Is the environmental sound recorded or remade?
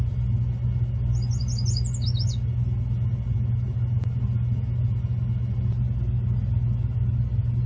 recorded